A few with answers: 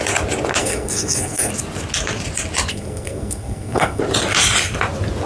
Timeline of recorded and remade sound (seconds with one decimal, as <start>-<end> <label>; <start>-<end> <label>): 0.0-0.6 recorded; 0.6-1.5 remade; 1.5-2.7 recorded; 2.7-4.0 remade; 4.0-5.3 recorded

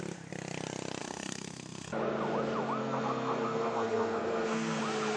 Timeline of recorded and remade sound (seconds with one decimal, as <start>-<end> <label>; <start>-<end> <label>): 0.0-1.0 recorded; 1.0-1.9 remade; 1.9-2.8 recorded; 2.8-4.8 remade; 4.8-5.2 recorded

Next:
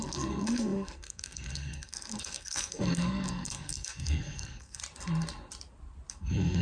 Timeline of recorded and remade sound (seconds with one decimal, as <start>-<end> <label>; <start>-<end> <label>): 0.0-4.8 remade; 4.8-6.1 recorded; 6.1-6.6 remade

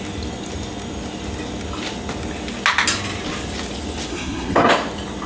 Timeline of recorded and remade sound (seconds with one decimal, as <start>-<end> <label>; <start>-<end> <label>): 0.0-4.1 recorded; 4.1-4.7 remade; 4.7-5.3 recorded

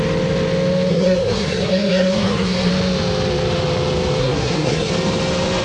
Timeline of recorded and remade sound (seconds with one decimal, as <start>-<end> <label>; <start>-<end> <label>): 0.0-0.9 recorded; 0.9-2.7 remade; 2.7-4.2 recorded; 4.2-4.9 remade; 4.9-5.6 recorded